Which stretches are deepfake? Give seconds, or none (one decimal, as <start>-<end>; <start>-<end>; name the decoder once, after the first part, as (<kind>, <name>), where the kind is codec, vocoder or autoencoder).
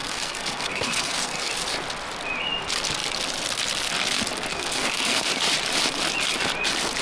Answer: 0.0-1.5 (codec, SNAC); 4.5-5.3